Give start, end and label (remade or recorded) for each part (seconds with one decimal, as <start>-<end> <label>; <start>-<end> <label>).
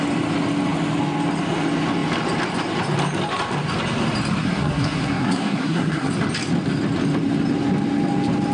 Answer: 0.0-4.4 recorded; 4.4-6.1 remade; 6.1-8.5 recorded